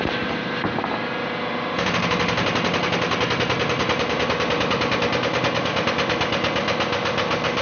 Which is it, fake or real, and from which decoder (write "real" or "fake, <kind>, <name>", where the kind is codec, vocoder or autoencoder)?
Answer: real